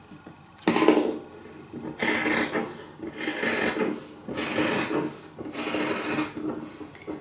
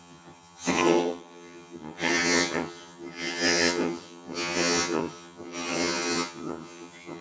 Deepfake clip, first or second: second